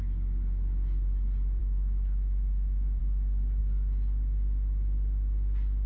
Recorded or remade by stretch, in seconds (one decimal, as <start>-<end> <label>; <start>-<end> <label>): 0.0-1.6 recorded; 1.6-3.0 remade; 3.0-5.9 recorded